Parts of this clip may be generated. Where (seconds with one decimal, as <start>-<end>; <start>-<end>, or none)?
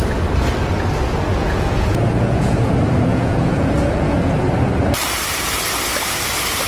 1.3-2.7; 3.1-4.3